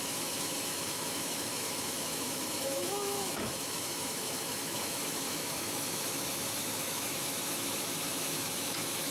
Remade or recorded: remade